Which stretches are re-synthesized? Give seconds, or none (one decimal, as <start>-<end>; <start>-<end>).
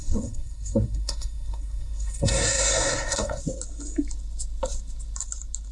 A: 0.0-3.4